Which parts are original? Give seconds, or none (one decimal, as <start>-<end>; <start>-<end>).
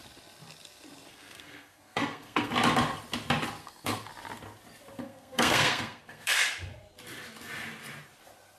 0.0-1.1; 2.5-3.6; 4.1-5.0; 6.5-8.6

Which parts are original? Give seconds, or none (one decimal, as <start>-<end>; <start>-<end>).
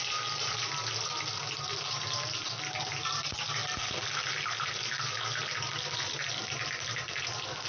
0.0-7.7